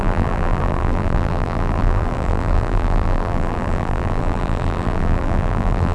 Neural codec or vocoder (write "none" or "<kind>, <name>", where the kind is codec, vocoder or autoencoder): vocoder, BigVGAN v2